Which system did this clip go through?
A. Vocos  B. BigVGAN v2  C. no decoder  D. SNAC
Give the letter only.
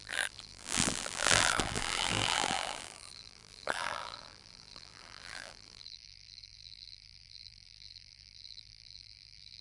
B